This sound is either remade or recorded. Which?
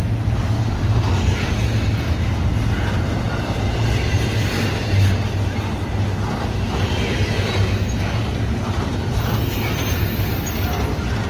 recorded